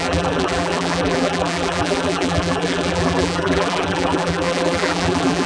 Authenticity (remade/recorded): remade